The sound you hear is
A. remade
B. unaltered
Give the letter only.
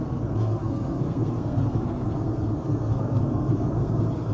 A